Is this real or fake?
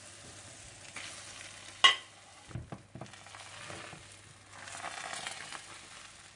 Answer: real